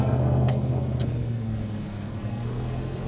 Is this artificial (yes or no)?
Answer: yes